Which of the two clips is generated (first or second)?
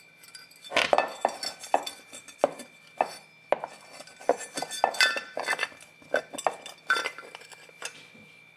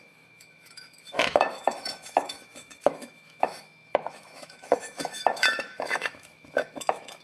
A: second